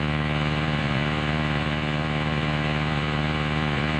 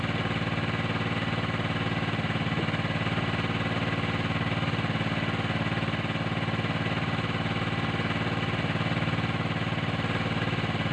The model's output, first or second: first